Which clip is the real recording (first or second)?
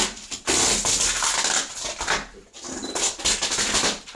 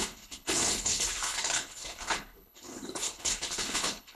first